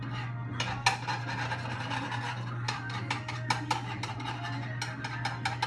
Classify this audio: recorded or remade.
recorded